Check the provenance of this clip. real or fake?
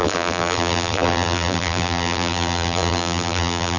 fake